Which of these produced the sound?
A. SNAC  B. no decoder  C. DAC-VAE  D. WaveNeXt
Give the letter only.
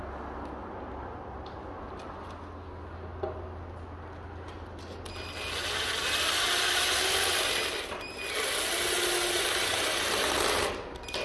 B